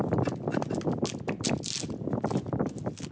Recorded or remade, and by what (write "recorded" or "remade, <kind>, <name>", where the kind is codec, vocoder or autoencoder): recorded